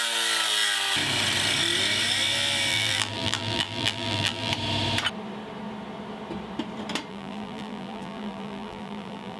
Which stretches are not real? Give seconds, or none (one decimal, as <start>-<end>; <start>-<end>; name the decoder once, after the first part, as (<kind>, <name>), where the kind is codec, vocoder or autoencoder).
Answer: 2.7-4.5 (vocoder, BigVGAN v2); 7.1-9.4